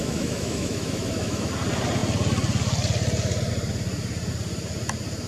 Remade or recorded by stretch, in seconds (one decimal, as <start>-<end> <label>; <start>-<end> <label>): 0.0-1.5 remade; 1.5-5.3 recorded